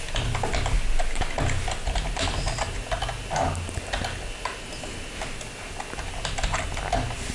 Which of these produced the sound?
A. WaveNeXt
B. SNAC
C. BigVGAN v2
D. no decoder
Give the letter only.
D